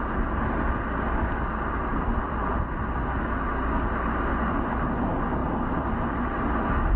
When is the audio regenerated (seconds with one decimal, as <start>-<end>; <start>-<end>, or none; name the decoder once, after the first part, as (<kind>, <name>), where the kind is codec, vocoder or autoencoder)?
1.9-2.5 (vocoder, BigVGAN v2); 4.3-4.9; 5.4-7.0